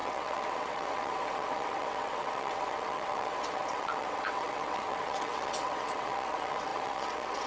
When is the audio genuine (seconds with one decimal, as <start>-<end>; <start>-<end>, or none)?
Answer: none